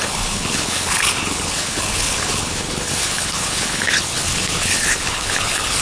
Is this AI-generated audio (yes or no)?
yes